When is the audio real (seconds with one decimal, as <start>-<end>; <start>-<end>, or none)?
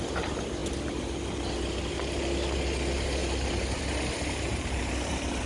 0.0-3.2; 3.8-4.5